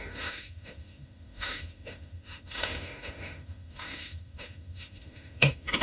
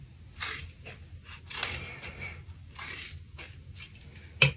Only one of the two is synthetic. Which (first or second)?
first